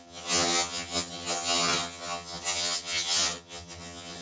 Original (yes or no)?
no